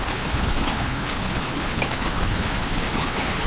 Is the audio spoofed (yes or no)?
yes